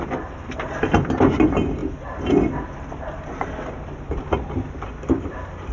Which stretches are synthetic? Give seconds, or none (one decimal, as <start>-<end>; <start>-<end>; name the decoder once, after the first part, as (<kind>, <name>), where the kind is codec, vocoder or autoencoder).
none